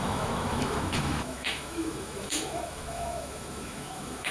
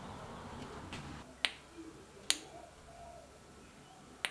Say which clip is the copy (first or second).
first